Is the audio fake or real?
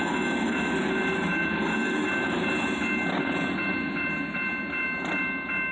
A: real